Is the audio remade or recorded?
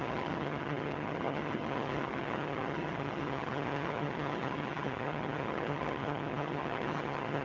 remade